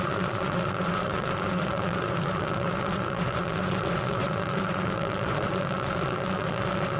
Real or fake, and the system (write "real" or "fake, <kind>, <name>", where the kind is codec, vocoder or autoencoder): fake, vocoder, Vocos